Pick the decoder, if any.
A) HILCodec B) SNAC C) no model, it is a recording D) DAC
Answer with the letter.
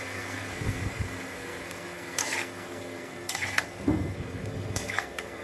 B